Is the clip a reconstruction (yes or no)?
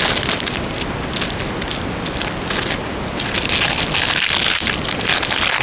no